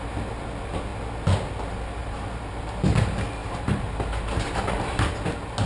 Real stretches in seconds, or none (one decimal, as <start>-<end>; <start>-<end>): 0.0-2.0; 2.7-3.4; 5.1-5.7